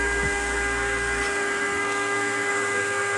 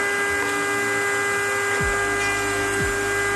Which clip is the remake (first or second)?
first